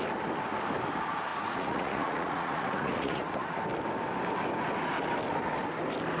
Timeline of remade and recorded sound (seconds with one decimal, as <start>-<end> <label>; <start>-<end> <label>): 0.0-1.3 recorded; 1.3-3.6 remade; 3.6-6.2 recorded